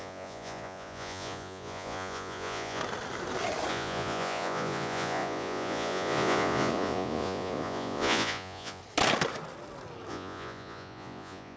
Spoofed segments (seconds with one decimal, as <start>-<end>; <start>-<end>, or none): 0.0-2.8; 3.7-8.8; 10.1-11.6

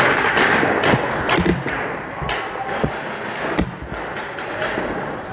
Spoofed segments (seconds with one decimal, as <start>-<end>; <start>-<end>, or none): none

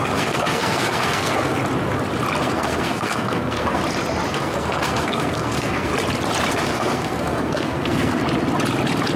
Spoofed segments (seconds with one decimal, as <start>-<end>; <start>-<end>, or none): 0.0-1.6; 2.4-3.8; 4.3-5.9; 6.5-8.2

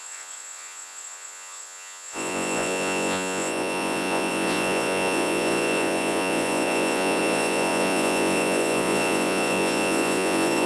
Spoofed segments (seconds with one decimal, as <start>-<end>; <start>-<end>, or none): 0.0-10.7

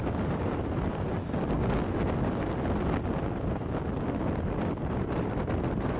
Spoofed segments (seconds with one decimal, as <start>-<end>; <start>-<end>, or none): 0.0-1.1; 4.7-6.0

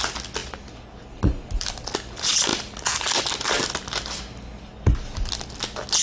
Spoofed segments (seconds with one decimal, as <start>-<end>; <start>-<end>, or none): none

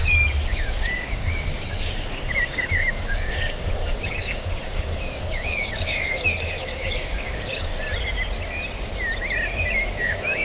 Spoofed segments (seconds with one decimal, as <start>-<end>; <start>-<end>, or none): 0.0-7.7; 9.9-10.4